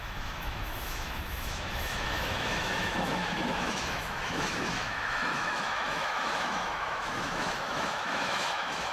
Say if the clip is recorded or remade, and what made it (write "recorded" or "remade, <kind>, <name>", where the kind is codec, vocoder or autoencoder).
remade, autoencoder, DAC-VAE